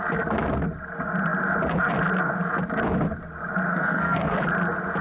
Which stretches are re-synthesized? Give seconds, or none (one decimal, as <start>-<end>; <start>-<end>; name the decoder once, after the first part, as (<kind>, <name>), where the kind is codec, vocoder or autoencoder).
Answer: 3.7-4.4 (codec, SNAC)